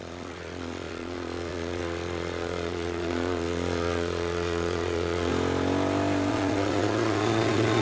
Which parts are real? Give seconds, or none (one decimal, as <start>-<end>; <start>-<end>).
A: 5.3-6.3